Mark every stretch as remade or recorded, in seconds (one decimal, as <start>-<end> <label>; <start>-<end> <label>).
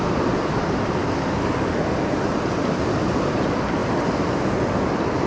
0.0-5.3 recorded